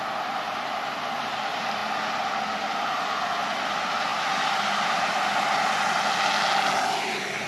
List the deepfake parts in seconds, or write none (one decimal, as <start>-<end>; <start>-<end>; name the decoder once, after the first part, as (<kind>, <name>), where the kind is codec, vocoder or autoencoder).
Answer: none